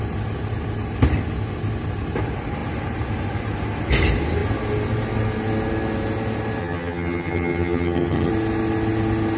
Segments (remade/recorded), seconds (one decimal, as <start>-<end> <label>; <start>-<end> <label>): 0.0-6.6 recorded; 6.6-8.3 remade; 8.3-9.4 recorded

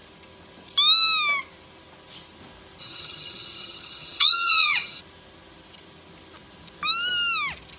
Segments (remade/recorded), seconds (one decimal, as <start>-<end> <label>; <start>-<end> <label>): 0.0-2.8 recorded; 2.8-5.0 remade; 5.0-7.8 recorded